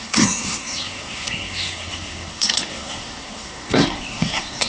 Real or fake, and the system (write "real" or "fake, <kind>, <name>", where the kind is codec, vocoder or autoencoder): fake, codec, SNAC